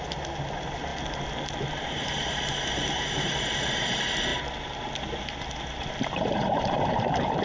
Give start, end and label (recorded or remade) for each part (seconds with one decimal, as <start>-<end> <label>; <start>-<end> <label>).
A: 0.0-0.9 remade; 0.9-1.7 recorded; 1.7-4.3 remade; 4.3-5.9 recorded; 5.9-7.4 remade